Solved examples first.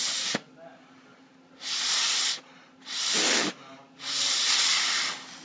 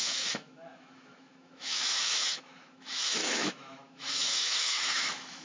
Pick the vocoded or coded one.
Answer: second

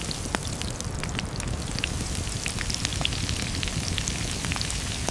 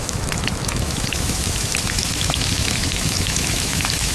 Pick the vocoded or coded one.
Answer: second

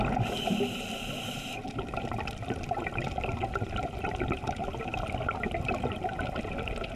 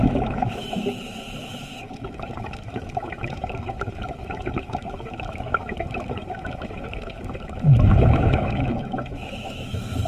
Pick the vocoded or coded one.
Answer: second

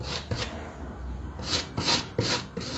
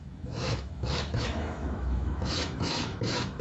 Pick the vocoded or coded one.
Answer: second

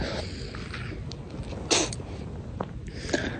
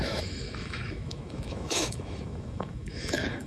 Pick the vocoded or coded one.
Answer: second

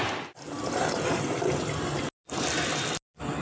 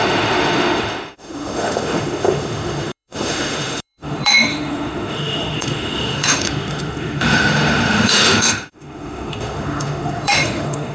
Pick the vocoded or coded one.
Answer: second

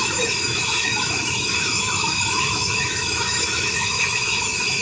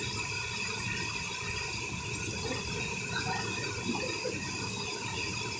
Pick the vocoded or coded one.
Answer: first